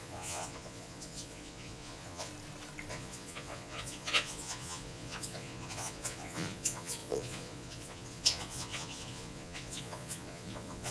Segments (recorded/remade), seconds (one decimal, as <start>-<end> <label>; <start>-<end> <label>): 0.0-2.3 remade; 2.3-2.9 recorded; 2.9-10.9 remade